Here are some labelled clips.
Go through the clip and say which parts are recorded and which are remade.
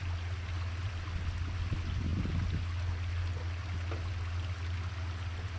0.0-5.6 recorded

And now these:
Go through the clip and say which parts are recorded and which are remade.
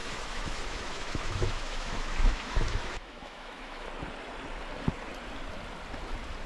0.0-3.9 remade; 3.9-6.5 recorded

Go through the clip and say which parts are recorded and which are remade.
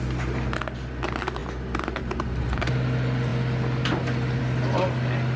0.0-5.4 recorded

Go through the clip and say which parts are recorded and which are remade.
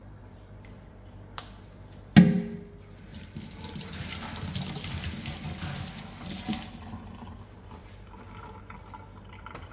0.0-0.9 remade; 0.9-7.8 recorded; 7.8-8.6 remade; 8.6-9.7 recorded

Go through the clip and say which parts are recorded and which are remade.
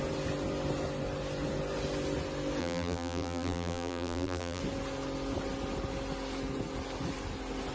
0.0-2.6 recorded; 2.6-4.6 remade; 4.6-7.7 recorded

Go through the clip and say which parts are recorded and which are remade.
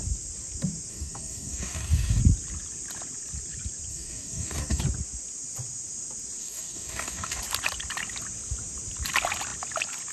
0.0-0.9 recorded; 0.9-2.2 remade; 2.2-3.9 recorded; 3.9-4.8 remade; 4.8-6.4 recorded; 6.4-7.4 remade; 7.4-10.1 recorded